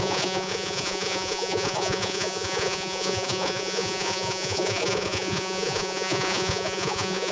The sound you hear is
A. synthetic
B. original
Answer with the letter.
A